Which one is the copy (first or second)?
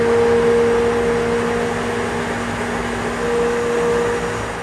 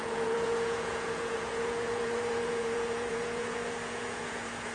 second